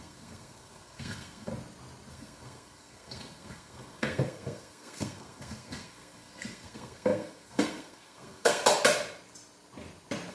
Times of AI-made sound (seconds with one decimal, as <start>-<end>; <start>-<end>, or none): 0.0-1.5; 2.1-8.6